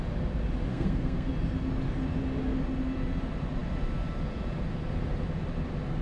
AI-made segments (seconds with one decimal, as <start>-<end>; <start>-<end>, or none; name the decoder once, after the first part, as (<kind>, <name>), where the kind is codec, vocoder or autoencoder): 0.7-1.3 (codec, SNAC)

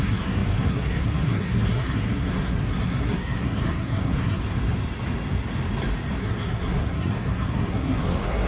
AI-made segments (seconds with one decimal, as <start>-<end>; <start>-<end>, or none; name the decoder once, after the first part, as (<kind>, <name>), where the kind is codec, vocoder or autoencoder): 0.0-4.4 (codec, SNAC); 6.2-8.5

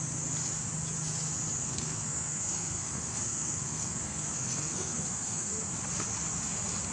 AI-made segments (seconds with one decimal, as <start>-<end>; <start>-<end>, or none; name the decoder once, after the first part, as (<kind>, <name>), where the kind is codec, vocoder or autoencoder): 1.6-5.7 (codec, SNAC)